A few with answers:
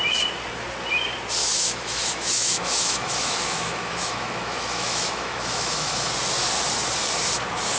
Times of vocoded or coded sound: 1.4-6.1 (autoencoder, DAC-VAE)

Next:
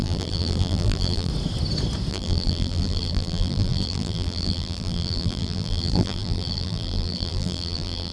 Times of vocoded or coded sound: 0.0-1.3 (vocoder, BigVGAN v2); 2.1-8.1

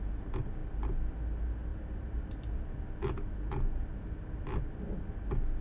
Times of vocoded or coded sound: none

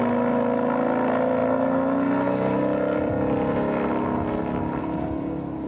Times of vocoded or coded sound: none

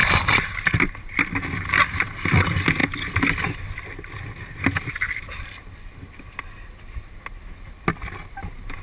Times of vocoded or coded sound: 0.0-1.3 (vocoder, BigVGAN v2); 2.8-5.2